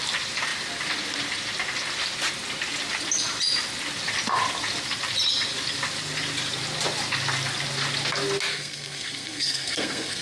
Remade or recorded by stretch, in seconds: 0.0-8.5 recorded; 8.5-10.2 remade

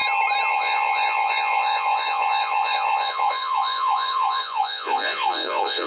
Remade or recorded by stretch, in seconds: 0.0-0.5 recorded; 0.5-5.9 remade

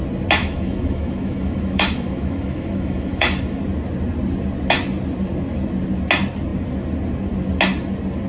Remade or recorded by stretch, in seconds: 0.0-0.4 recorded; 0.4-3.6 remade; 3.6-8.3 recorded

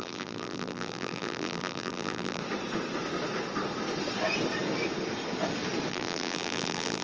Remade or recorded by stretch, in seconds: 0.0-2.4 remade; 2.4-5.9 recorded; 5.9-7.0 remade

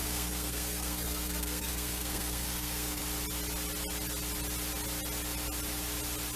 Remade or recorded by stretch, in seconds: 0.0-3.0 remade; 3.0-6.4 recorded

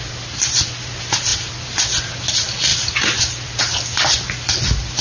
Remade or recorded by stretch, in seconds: 0.0-5.0 recorded

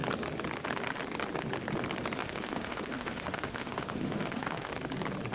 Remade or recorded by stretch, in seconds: 0.0-2.2 recorded; 2.2-4.7 remade; 4.7-5.3 recorded